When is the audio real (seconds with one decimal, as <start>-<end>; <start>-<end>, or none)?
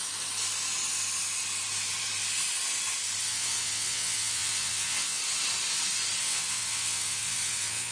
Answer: 0.0-3.2; 5.2-6.2